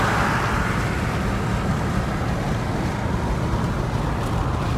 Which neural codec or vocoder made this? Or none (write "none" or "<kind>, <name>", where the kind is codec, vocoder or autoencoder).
none